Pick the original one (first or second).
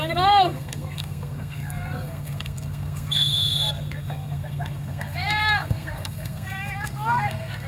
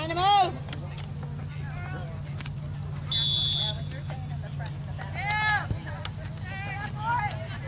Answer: second